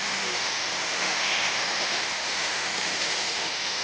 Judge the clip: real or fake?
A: fake